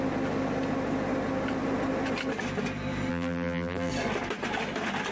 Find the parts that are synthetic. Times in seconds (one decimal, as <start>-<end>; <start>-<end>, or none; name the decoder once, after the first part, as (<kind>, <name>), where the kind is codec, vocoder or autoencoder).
3.1-3.9 (vocoder, BigVGAN v2)